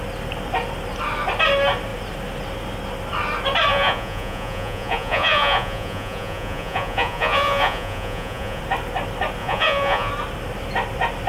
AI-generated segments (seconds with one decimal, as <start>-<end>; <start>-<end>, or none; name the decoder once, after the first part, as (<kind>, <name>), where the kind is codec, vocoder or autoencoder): 3.7-8.6 (vocoder, Vocos); 9.4-10.1